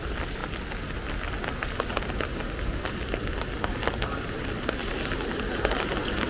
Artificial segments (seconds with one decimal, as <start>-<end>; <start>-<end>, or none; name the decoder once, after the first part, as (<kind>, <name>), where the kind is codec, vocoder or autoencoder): none